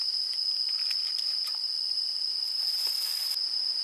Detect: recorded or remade recorded